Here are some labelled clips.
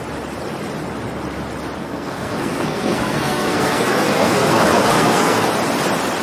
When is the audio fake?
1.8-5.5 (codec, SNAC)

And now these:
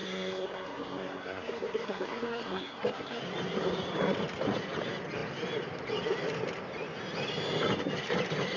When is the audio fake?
0.0-3.2 (codec, SNAC)

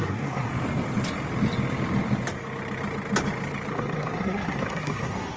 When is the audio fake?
0.0-0.5 (codec, SNAC); 3.7-5.4

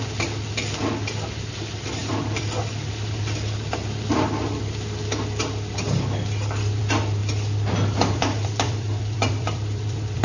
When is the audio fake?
7.2-10.2 (vocoder, BigVGAN v2)

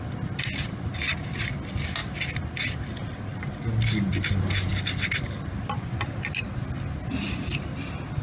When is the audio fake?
none

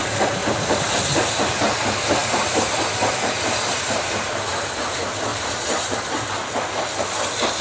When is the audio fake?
0.4-1.0 (vocoder, BigVGAN v2); 2.2-3.1; 5.3-6.2

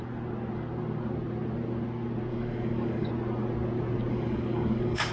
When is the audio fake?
2.3-3.1 (codec, DAC); 4.1-5.1